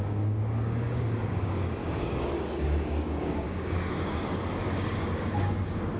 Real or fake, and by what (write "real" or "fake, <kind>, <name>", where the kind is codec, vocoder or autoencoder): fake, codec, DAC